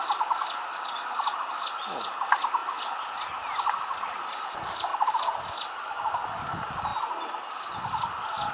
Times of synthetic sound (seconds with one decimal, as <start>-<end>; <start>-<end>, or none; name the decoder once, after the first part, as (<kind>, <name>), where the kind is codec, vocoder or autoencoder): none